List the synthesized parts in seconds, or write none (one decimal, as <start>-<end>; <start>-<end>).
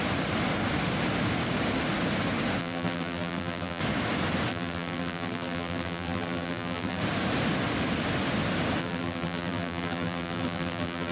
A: 2.6-3.8; 4.5-7.0; 8.8-11.1